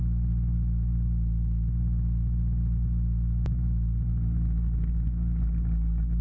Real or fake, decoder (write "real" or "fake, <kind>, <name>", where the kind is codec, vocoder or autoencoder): real